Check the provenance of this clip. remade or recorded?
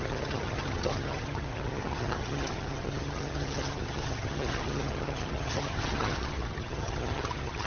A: remade